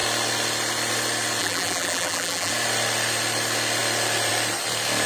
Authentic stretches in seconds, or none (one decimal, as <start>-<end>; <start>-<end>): 0.0-1.4; 2.5-5.1

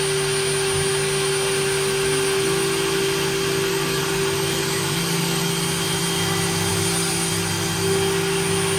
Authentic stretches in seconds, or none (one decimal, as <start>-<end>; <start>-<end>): 0.0-3.7; 5.5-8.8